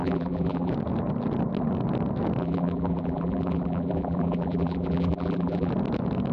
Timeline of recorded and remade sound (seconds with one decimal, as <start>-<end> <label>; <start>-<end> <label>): 0.0-0.7 remade; 0.7-2.4 recorded; 2.4-5.7 remade; 5.7-6.3 recorded